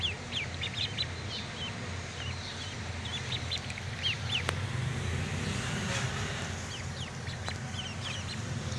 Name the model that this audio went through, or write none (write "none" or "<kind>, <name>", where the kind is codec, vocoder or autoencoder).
none